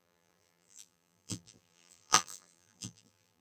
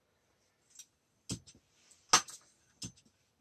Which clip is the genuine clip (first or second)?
second